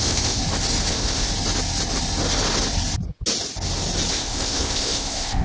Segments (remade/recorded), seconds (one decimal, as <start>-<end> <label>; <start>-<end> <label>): 0.0-0.4 remade; 0.4-0.9 recorded; 0.9-1.3 remade; 1.3-4.1 recorded; 4.1-5.4 remade